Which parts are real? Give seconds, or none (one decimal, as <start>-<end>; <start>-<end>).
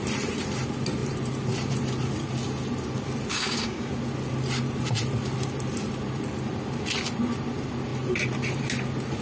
0.0-3.3; 3.9-9.2